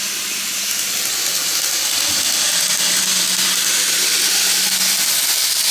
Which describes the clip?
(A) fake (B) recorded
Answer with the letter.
B